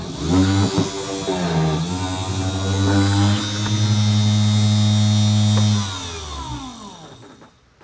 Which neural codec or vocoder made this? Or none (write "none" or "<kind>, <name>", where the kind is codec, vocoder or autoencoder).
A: none